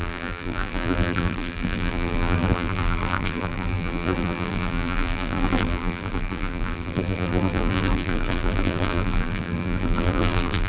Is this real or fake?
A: fake